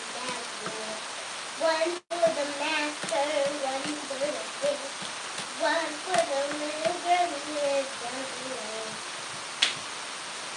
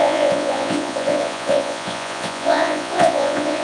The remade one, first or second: second